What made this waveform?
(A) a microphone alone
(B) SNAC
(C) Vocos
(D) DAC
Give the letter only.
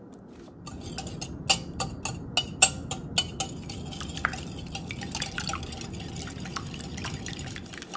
A